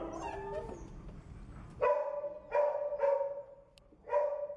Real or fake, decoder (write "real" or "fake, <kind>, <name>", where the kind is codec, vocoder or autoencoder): real